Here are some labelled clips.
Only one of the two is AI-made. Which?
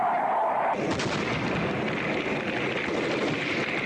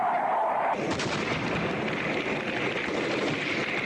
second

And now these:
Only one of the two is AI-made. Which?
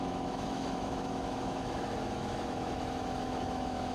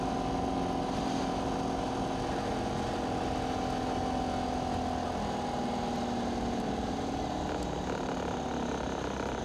first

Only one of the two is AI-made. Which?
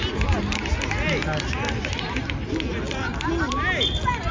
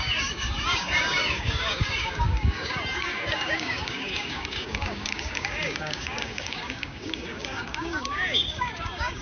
second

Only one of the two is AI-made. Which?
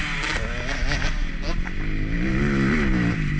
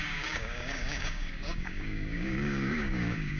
second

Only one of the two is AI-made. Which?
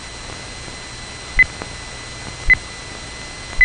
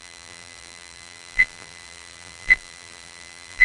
second